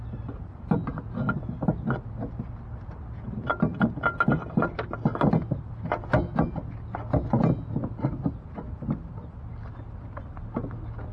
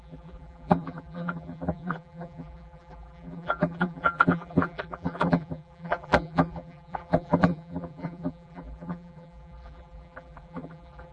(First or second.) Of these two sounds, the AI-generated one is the second